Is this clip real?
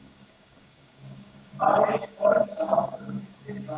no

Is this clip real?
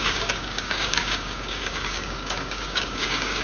no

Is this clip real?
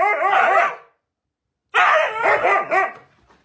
yes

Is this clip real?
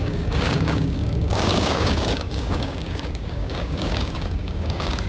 no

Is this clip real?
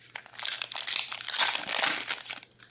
yes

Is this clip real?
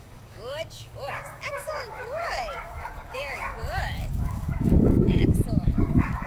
no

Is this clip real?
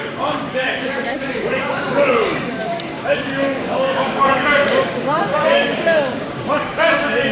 no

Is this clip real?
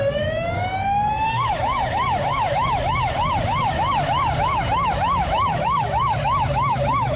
no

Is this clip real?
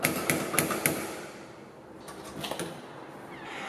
yes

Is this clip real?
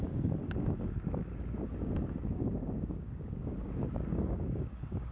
no